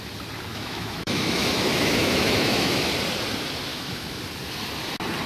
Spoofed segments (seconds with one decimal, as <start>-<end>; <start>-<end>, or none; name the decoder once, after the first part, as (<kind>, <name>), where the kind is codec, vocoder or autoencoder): 0.5-2.9 (autoencoder, DAC-VAE); 3.7-4.2